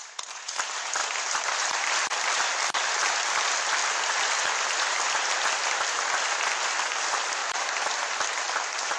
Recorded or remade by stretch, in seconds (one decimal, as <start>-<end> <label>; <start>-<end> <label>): 0.0-1.0 recorded; 1.0-2.5 remade; 2.5-3.8 recorded; 3.8-5.3 remade; 5.3-7.4 recorded; 7.4-9.0 remade